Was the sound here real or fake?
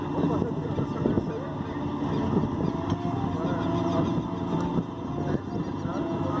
real